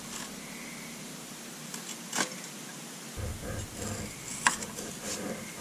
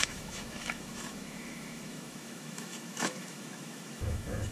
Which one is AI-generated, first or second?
second